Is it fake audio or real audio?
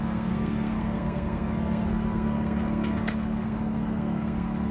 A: fake